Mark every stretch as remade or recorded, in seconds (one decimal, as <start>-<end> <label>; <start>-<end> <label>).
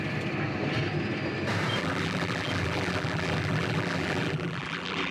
0.0-1.8 recorded; 1.8-5.1 remade